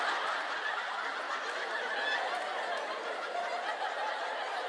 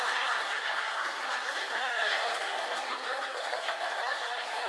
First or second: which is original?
first